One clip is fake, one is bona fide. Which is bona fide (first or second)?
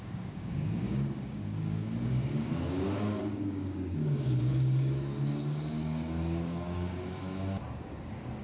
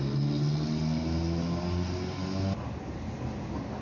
second